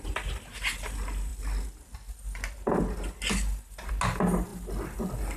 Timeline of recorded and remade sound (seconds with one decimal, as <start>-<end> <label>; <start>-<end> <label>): 0.0-5.4 recorded